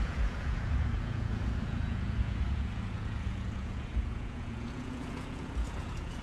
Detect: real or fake fake